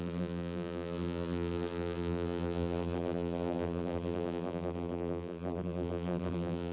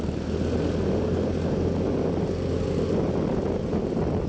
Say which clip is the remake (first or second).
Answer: first